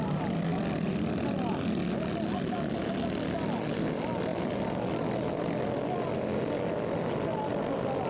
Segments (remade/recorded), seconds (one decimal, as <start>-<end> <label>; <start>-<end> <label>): 0.0-8.1 recorded